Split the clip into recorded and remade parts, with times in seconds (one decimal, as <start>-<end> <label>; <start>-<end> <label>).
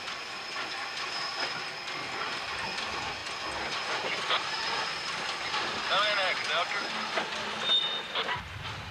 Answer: 0.0-8.9 recorded